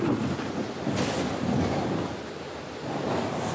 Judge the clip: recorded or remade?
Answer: recorded